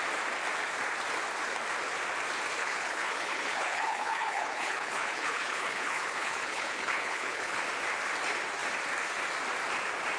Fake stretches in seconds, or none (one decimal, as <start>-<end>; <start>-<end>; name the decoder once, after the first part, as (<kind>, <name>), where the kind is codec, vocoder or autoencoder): 2.6-7.6 (codec, HILCodec)